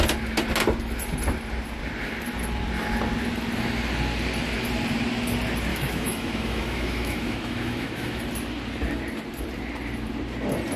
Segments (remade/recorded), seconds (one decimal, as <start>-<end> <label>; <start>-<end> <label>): 0.0-5.7 recorded; 5.7-8.2 remade; 8.2-10.8 recorded